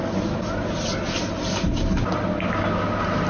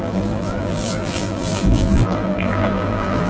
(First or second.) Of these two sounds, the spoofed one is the second